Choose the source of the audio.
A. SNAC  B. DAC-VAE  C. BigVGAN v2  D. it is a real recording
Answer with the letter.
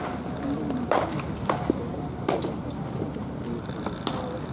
D